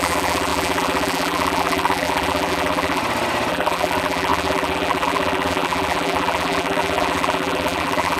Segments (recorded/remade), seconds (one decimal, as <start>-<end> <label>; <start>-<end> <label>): 0.0-3.0 remade; 3.0-3.5 recorded; 3.5-8.2 remade